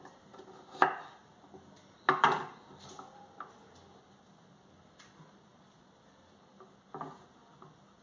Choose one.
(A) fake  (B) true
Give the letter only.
B